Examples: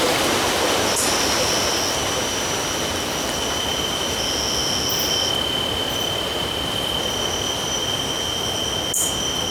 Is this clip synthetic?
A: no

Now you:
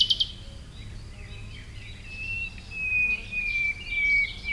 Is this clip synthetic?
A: no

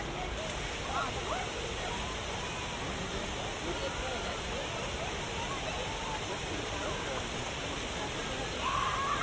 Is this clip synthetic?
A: no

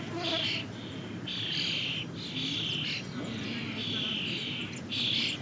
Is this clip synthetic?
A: no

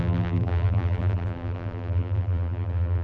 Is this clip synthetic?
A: yes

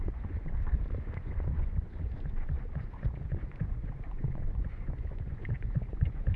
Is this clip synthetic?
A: yes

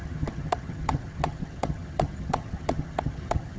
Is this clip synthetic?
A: yes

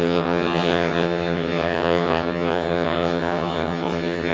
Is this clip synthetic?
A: yes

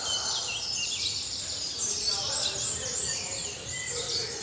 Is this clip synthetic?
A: no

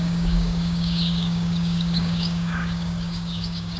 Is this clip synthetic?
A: yes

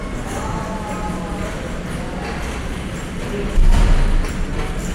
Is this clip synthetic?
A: no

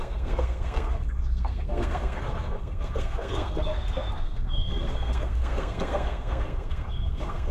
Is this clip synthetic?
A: yes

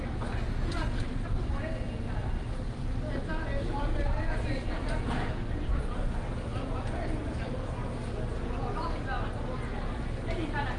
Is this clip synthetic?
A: no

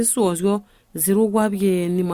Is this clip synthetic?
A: no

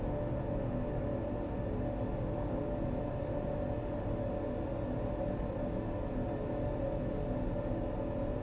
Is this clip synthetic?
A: no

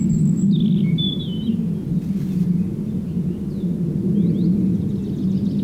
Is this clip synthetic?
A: no